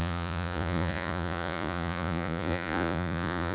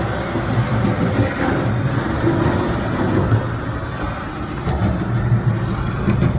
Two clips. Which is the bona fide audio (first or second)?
second